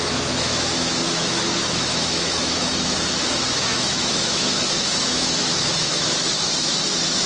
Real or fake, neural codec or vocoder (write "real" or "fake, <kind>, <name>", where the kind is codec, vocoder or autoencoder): fake, autoencoder, DAC-VAE